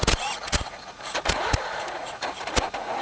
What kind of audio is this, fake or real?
fake